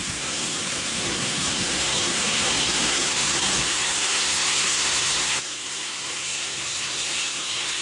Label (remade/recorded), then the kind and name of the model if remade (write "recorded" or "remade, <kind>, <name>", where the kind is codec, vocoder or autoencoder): remade, codec, SNAC